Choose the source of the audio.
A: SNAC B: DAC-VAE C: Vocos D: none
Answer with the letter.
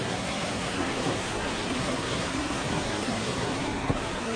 A